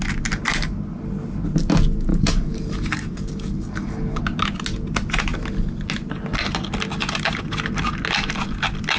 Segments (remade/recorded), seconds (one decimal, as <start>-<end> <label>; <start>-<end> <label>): 0.0-2.1 recorded; 2.1-4.2 remade; 4.2-9.0 recorded